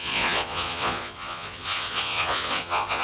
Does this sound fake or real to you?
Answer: fake